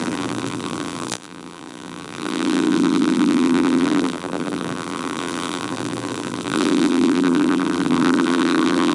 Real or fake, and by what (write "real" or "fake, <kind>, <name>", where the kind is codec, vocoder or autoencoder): fake, vocoder, BigVGAN v2